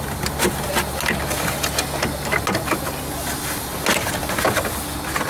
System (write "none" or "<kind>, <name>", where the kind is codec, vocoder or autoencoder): none